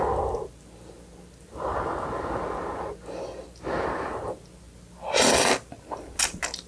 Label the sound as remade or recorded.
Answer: recorded